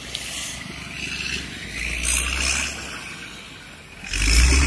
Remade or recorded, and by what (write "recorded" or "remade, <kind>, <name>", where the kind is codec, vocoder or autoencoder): recorded